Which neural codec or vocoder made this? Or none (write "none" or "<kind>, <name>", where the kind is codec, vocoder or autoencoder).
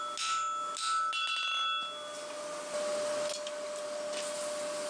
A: none